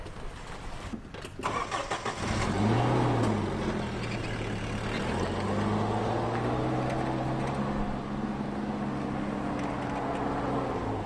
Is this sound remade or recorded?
recorded